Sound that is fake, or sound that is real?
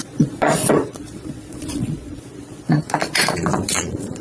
fake